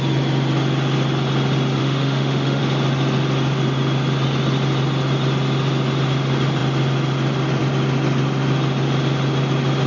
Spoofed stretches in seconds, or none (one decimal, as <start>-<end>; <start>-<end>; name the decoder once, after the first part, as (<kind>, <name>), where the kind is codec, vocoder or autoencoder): 1.8-2.6 (autoencoder, DAC-VAE)